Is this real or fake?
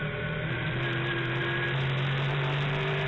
real